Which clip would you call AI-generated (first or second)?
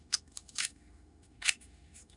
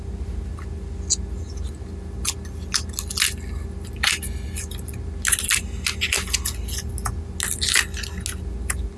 first